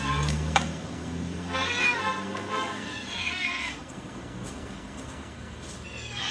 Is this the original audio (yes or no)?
no